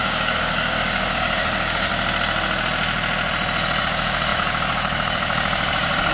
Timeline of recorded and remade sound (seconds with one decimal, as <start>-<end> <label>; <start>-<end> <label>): 0.0-1.9 remade; 1.9-3.8 recorded; 3.8-6.1 remade